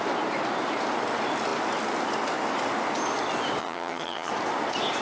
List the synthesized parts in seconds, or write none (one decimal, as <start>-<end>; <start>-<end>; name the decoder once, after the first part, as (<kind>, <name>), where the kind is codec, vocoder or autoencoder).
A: 3.6-4.3 (vocoder, HiFi-GAN)